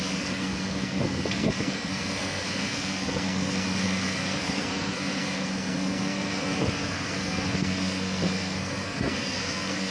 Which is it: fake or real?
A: fake